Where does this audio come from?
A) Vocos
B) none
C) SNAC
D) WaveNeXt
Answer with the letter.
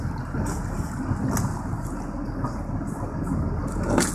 B